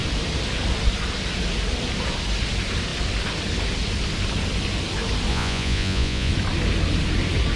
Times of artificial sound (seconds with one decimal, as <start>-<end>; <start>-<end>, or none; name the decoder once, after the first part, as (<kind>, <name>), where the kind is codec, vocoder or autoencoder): 5.3-6.3 (vocoder, Vocos)